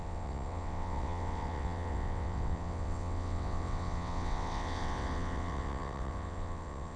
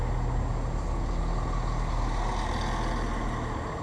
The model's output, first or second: first